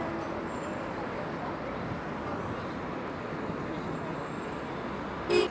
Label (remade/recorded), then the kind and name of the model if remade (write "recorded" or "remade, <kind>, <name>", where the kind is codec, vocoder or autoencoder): recorded